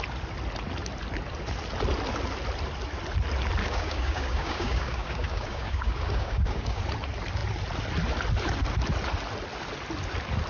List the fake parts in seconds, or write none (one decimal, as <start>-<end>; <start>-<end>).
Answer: 3.6-6.8